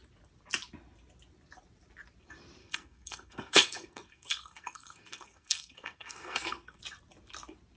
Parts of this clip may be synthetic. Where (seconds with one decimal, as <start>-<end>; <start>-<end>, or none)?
2.6-6.8